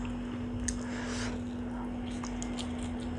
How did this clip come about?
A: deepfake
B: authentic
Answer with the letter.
B